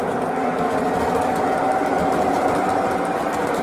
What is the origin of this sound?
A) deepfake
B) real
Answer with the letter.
B